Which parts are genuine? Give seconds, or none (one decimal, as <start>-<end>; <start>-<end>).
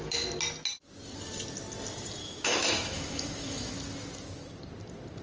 0.0-2.2; 3.7-5.2